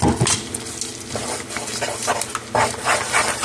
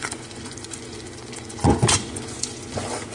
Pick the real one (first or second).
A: first